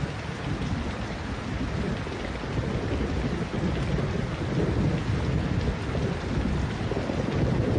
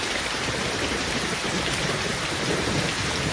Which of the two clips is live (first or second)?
first